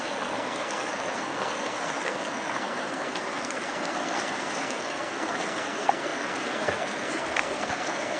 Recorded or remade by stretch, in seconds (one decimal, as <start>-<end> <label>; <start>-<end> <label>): 0.0-8.2 remade